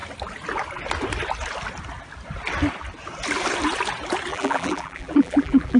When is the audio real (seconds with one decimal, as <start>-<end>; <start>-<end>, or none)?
0.0-4.3